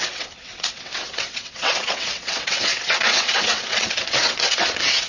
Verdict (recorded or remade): remade